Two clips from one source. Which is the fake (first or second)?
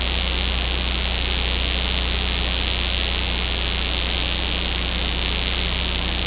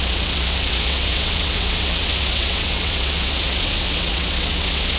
second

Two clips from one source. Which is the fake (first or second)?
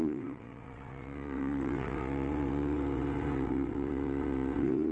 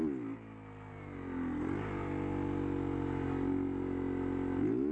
first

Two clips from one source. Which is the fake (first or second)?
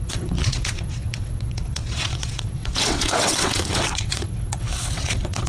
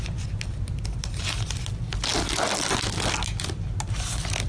first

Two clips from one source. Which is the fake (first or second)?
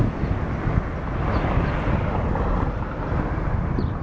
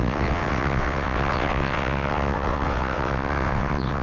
second